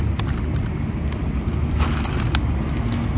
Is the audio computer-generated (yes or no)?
no